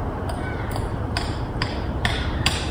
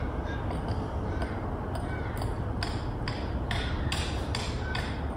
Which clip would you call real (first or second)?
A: second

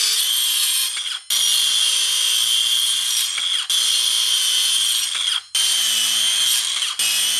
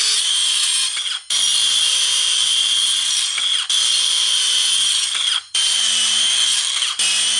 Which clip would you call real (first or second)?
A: first